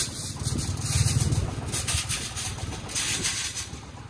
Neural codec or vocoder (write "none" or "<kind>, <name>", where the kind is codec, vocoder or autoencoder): none